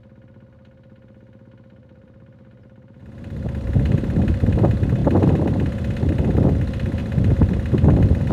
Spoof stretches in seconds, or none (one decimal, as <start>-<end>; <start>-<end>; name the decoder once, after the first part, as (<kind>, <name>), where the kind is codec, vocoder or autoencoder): 1.8-4.2 (vocoder, BigVGAN v2); 7.0-7.5